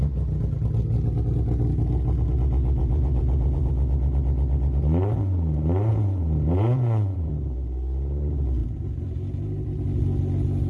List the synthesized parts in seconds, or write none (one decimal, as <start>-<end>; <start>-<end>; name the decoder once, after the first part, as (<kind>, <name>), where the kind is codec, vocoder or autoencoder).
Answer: 2.8-3.7 (vocoder, Vocos); 5.9-7.3; 8.6-9.7